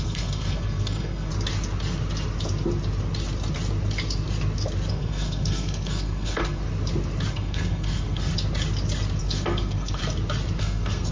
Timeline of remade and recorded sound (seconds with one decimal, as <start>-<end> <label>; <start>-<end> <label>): 0.0-1.3 remade; 1.3-4.9 recorded; 4.9-6.6 remade; 6.6-7.3 recorded; 7.3-8.3 remade; 8.3-9.2 recorded; 9.2-10.0 remade; 10.0-10.6 recorded; 10.6-11.1 remade